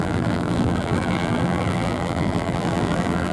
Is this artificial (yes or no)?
yes